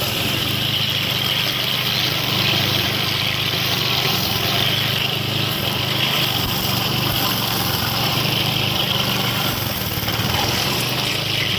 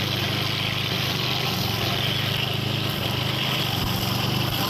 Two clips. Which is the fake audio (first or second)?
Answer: first